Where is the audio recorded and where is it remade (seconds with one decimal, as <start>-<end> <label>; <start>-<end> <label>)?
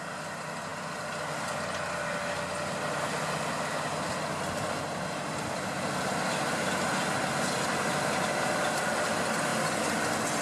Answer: 0.0-9.5 remade; 9.5-10.4 recorded